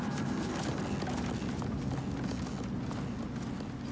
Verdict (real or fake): real